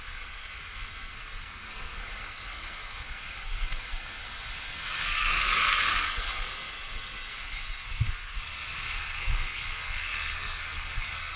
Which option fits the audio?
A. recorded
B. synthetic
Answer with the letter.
B